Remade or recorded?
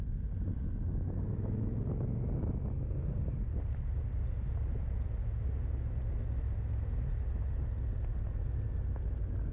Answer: recorded